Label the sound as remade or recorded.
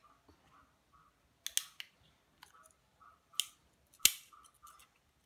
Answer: recorded